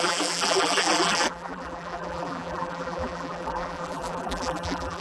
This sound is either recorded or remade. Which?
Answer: remade